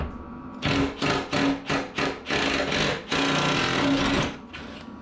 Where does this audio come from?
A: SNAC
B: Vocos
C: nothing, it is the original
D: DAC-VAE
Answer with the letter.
C